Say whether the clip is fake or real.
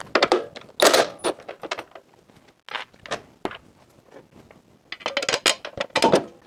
real